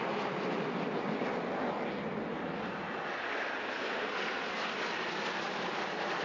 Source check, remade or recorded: recorded